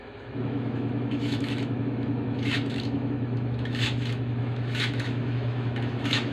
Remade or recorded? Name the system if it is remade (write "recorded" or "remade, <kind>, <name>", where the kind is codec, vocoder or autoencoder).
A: remade, autoencoder, DAC-VAE